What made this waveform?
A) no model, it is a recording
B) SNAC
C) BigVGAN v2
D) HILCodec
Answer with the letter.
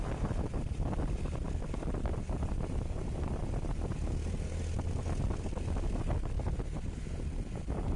A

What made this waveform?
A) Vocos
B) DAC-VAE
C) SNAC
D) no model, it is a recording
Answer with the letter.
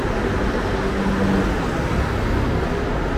D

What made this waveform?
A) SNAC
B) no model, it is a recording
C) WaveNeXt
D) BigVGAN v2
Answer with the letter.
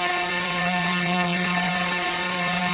C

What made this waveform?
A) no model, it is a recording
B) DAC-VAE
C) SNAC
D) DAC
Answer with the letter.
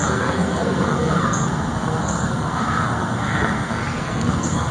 C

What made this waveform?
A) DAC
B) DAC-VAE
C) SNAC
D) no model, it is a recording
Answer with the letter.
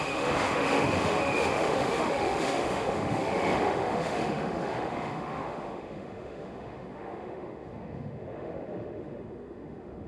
B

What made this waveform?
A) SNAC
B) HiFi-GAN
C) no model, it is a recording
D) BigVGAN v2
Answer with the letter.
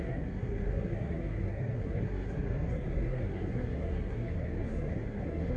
A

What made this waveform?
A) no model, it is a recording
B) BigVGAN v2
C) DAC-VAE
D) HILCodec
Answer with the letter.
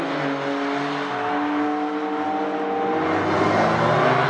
A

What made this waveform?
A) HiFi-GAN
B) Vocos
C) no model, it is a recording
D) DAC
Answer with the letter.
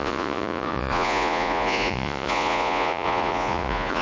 B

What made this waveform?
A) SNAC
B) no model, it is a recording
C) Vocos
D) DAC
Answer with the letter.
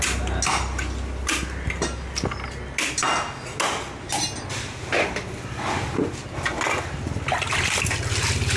B